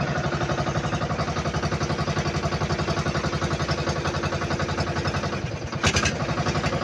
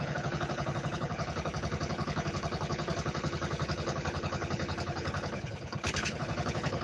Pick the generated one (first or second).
second